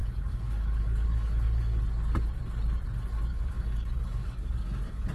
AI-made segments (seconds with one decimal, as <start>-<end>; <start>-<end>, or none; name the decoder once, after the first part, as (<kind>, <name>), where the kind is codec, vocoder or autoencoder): 0.0-1.8 (codec, DAC); 3.3-5.1